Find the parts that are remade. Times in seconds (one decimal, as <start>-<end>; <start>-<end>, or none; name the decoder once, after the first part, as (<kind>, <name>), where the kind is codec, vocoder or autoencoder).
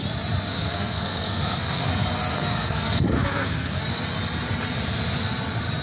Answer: 0.5-1.9 (codec, SNAC); 2.4-3.8